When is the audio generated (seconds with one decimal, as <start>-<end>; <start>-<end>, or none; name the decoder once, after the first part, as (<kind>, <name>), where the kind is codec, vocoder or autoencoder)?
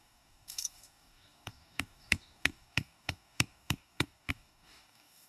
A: 0.0-5.3 (codec, DAC)